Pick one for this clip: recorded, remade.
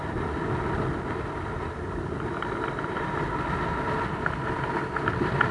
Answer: recorded